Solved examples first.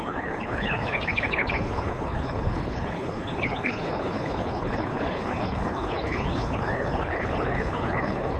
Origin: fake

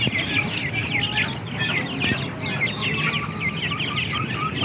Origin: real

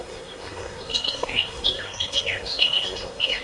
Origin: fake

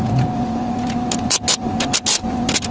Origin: real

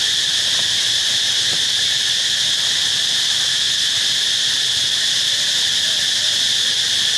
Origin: real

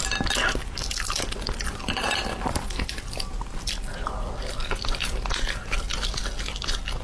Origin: real